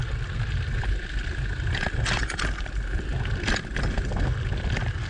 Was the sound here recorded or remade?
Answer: recorded